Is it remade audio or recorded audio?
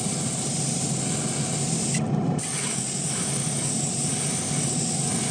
recorded